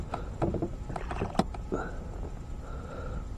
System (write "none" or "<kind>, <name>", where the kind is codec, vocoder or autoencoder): none